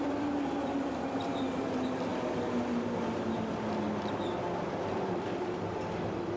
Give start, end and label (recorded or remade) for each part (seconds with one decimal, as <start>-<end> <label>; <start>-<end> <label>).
0.0-6.4 recorded